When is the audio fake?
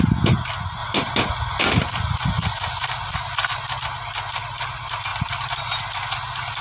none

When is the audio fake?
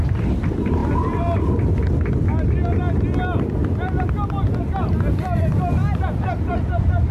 none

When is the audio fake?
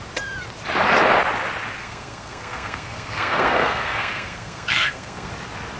1.8-5.3 (codec, SNAC)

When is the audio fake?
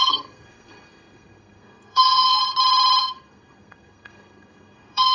0.0-2.4 (codec, SNAC); 3.0-5.1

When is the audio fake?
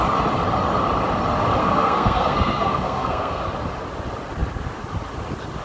1.6-3.4 (codec, SNAC)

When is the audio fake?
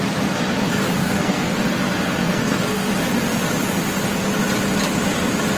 1.0-1.5 (codec, SNAC); 2.2-2.9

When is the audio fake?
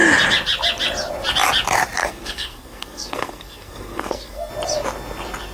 2.0-4.5 (codec, SNAC)